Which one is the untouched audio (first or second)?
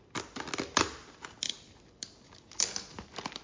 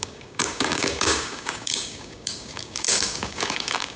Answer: first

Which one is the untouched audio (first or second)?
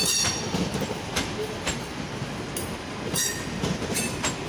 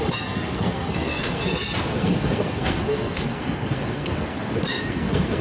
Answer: first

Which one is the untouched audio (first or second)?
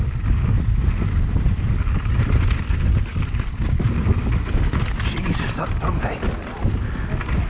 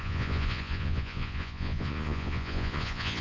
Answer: first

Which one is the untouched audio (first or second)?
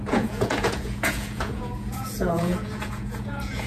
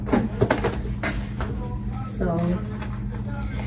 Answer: second